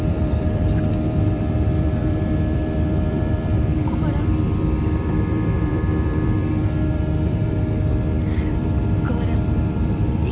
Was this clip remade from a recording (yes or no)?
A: yes